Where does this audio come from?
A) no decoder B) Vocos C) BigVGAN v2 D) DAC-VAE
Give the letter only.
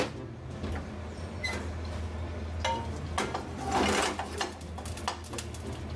A